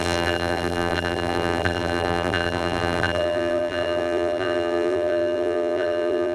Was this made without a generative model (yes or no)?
no